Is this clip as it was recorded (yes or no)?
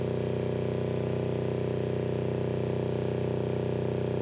yes